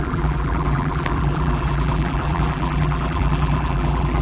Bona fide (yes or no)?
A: no